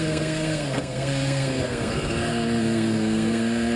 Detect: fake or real fake